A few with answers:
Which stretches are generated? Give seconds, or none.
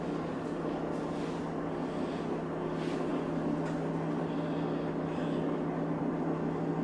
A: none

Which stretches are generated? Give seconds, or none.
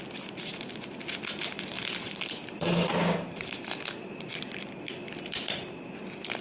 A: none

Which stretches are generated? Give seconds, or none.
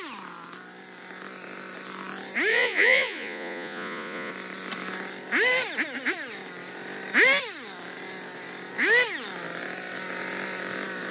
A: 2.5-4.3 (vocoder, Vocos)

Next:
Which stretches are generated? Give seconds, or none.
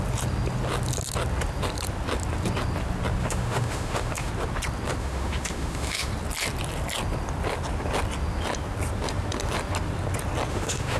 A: 3.2-4.3 (autoencoder, DAC-VAE); 5.0-6.1; 10.5-11.0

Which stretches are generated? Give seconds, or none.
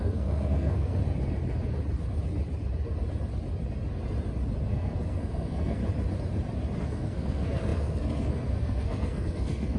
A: 0.0-1.0 (codec, SNAC); 4.7-5.8; 6.8-9.8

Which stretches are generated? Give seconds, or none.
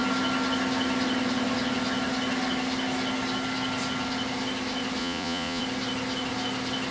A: 5.0-5.6 (vocoder, Vocos)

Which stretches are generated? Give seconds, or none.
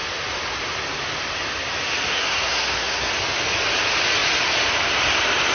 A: 2.1-3.1 (codec, SNAC)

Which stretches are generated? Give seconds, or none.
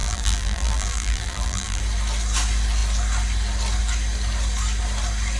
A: 0.0-1.8 (vocoder, BigVGAN v2)